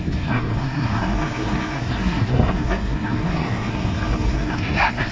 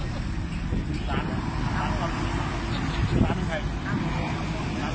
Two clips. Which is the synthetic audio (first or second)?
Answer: first